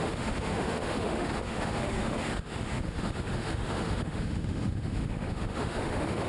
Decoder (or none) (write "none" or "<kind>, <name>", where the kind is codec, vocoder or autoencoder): autoencoder, DAC-VAE